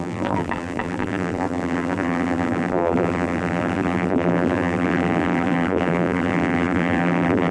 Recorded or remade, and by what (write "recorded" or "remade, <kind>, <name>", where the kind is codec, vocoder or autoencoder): remade, vocoder, BigVGAN v2